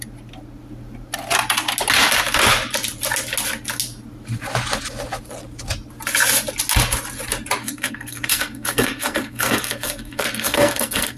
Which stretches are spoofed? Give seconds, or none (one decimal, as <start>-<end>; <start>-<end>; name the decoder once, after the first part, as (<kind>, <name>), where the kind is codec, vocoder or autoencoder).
7.6-11.2 (codec, SNAC)